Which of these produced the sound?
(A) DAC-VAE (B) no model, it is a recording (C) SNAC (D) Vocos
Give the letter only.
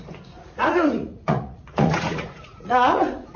D